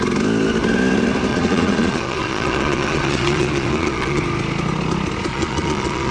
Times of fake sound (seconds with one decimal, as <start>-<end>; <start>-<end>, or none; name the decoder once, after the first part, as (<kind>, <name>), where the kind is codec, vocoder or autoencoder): 1.3-4.2 (vocoder, Vocos); 5.3-6.1